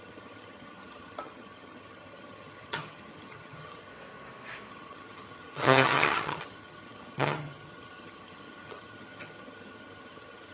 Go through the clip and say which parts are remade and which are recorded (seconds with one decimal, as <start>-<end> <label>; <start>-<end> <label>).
0.0-3.9 remade; 3.9-4.7 recorded; 4.7-10.5 remade